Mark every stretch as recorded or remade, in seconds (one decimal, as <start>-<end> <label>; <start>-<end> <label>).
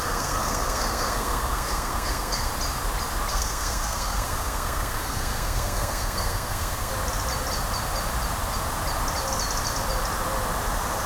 0.0-2.5 remade; 2.5-3.3 recorded; 3.3-6.9 remade; 6.9-11.1 recorded